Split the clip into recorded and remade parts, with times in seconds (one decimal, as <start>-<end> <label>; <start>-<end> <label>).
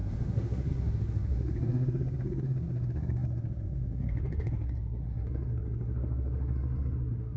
0.0-7.4 remade